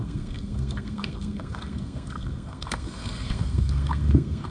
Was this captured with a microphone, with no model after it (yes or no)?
no